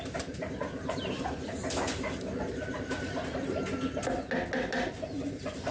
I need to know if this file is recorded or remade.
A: recorded